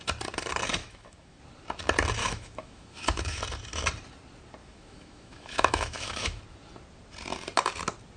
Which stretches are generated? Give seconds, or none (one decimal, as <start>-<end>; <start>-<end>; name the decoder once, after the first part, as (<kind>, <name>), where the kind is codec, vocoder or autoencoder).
0.8-1.4 (autoencoder, DAC-VAE); 2.2-3.4; 4.6-6.4